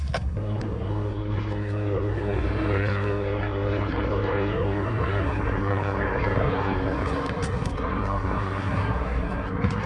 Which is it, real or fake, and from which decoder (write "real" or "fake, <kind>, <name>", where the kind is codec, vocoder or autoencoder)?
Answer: fake, codec, SNAC